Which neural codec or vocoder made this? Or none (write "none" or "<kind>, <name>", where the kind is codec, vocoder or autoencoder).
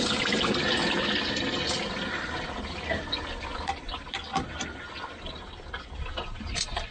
none